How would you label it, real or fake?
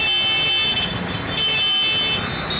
real